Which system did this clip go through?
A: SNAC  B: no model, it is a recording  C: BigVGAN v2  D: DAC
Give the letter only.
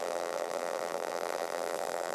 C